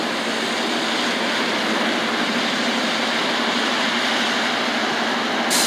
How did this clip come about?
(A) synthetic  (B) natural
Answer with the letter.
B